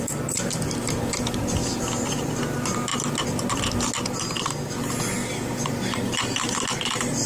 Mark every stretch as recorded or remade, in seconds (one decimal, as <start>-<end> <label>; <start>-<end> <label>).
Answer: 0.0-7.3 recorded

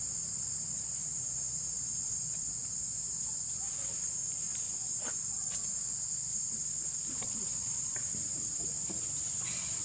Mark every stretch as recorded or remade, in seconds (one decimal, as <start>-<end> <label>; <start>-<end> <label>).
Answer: 0.0-1.0 remade; 1.0-2.7 recorded; 2.7-3.4 remade; 3.4-6.3 recorded; 6.3-9.8 remade

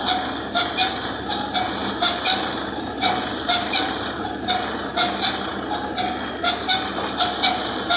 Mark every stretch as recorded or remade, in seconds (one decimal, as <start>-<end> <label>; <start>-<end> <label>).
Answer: 0.0-1.8 recorded; 1.8-4.3 remade; 4.3-4.9 recorded; 4.9-5.5 remade; 5.5-8.0 recorded

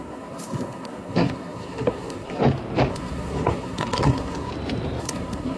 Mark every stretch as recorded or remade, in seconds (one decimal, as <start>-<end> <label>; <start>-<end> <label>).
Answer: 0.0-2.4 remade; 2.4-2.9 recorded; 2.9-4.5 remade; 4.5-5.0 recorded; 5.0-5.6 remade

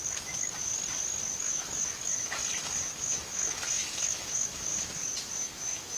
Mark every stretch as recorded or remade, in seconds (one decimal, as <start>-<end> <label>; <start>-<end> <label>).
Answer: 0.0-0.7 remade; 0.7-1.4 recorded; 1.4-2.4 remade; 2.4-3.0 recorded; 3.0-4.7 remade; 4.7-5.4 recorded; 5.4-6.0 remade